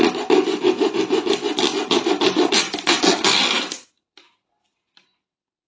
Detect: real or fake real